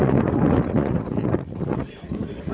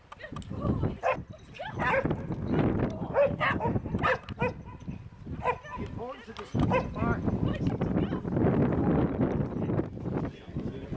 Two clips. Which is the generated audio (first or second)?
first